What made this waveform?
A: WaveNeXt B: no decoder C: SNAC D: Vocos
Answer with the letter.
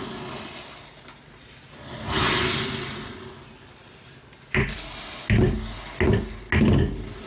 B